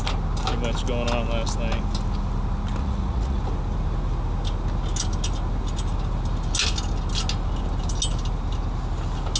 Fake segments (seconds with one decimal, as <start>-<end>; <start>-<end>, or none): 2.8-3.4